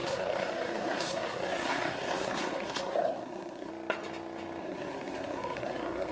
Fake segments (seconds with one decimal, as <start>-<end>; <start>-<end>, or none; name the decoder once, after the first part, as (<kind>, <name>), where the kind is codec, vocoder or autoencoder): 0.0-3.7 (codec, SNAC); 4.6-6.1